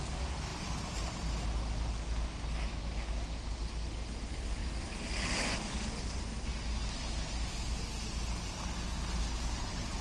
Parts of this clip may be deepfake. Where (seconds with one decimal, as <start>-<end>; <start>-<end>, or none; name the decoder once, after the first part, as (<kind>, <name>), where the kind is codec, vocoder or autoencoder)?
none